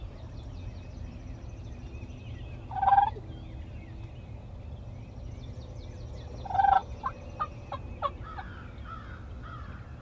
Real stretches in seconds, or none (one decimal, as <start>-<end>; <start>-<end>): 0.0-10.0